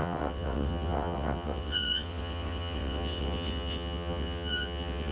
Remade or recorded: remade